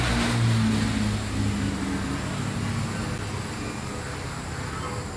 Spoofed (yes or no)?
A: no